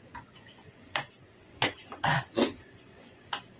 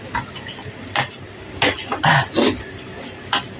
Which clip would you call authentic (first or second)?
second